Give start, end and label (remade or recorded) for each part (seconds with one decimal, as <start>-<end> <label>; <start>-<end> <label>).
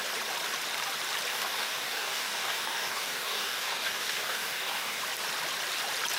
0.0-1.3 recorded; 1.3-5.0 remade; 5.0-6.2 recorded